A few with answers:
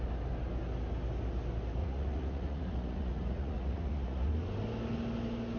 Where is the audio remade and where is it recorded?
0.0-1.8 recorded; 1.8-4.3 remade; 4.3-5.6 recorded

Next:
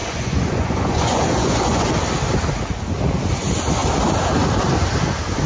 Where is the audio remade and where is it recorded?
0.0-1.9 remade; 1.9-5.5 recorded

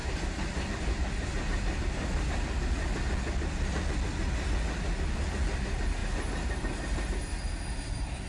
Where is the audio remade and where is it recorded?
0.0-8.3 recorded

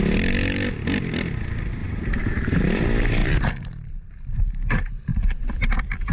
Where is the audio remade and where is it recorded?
0.0-1.8 recorded; 1.8-2.8 remade; 2.8-3.2 recorded; 3.2-4.5 remade; 4.5-5.1 recorded; 5.1-6.1 remade

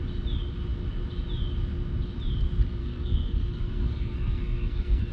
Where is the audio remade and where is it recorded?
0.0-2.8 recorded; 2.8-5.1 remade